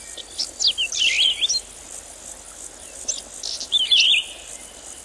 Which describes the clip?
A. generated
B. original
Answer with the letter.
B